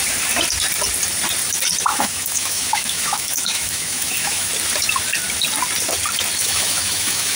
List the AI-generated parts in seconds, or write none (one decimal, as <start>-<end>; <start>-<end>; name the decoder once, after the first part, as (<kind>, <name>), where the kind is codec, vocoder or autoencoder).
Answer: 1.9-4.5 (autoencoder, DAC-VAE); 6.4-7.4